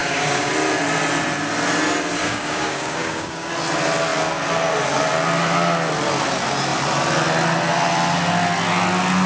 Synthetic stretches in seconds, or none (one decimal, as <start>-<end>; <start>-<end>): 0.0-0.5; 2.2-3.5